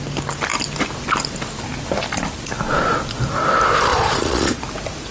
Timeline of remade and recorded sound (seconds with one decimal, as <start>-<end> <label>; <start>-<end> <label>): 0.0-3.9 recorded; 3.9-4.6 remade; 4.6-5.1 recorded